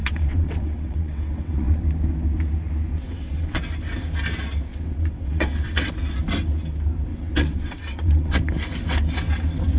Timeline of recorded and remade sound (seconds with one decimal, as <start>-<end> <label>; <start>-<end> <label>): 0.0-1.8 remade; 1.8-2.9 recorded; 2.9-3.6 remade; 3.6-4.7 recorded; 4.7-5.9 remade; 5.9-7.1 recorded; 7.1-8.4 remade; 8.4-9.8 recorded